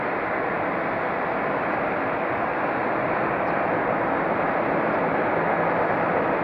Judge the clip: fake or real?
real